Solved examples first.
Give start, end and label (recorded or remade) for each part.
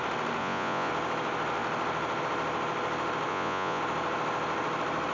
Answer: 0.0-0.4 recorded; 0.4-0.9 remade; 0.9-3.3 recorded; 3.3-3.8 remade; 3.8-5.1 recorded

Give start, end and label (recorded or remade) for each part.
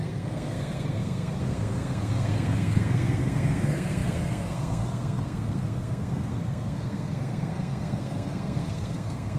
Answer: 0.0-9.4 remade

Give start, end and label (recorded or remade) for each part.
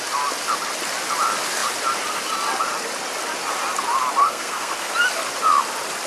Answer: 0.0-4.2 recorded; 4.2-4.9 remade; 4.9-6.1 recorded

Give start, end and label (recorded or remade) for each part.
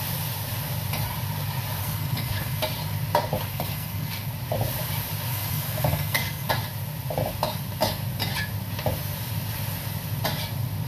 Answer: 0.0-1.8 recorded; 1.8-2.6 remade; 2.6-3.5 recorded; 3.5-4.3 remade; 4.3-5.3 recorded; 5.3-6.5 remade; 6.5-10.9 recorded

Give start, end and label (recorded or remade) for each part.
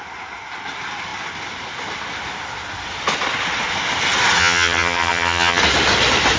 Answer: 0.0-4.4 recorded; 4.4-5.6 remade; 5.6-6.4 recorded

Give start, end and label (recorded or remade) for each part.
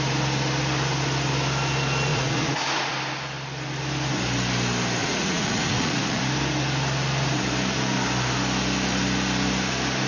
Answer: 0.0-2.1 recorded; 2.1-2.9 remade; 2.9-5.0 recorded; 5.0-6.2 remade; 6.2-10.1 recorded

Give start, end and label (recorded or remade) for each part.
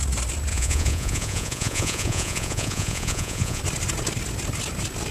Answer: 0.0-0.5 recorded; 0.5-3.6 remade; 3.6-5.1 recorded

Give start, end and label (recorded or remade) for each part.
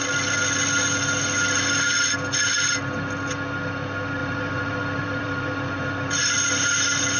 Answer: 0.0-4.2 recorded; 4.2-6.2 remade; 6.2-7.2 recorded